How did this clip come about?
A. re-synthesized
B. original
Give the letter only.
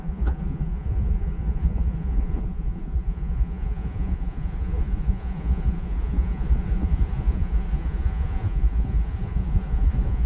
A